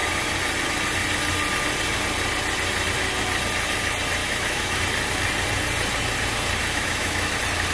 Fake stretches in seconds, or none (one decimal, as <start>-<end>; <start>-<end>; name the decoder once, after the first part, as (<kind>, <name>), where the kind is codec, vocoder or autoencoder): 4.2-4.8 (autoencoder, DAC-VAE); 6.6-7.3